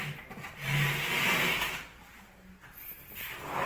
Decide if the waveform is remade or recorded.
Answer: recorded